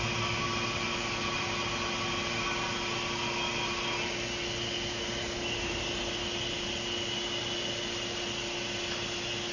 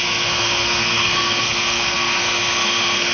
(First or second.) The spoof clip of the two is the second